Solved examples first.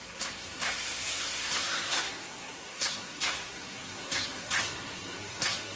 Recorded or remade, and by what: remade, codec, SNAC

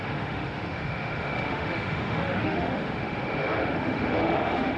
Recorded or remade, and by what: remade, autoencoder, DAC-VAE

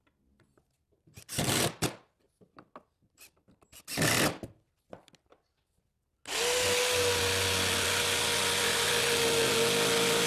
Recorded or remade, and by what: recorded